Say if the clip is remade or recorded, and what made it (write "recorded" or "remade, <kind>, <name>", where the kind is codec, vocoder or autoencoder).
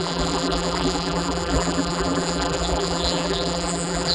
remade, vocoder, BigVGAN v2